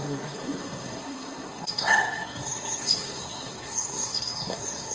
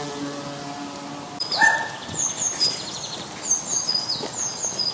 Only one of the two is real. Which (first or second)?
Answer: second